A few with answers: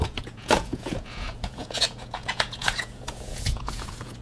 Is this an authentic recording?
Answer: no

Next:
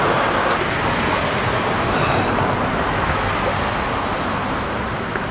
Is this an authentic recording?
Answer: yes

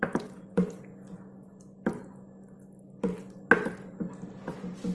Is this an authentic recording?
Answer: yes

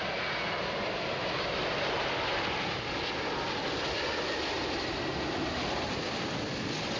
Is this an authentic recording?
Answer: yes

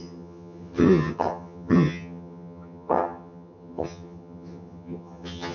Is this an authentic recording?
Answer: no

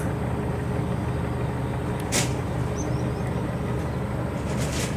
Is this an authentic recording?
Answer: yes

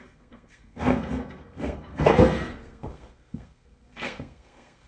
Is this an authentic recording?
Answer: no